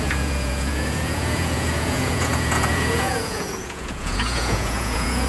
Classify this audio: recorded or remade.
remade